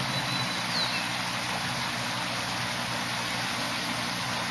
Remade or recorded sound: recorded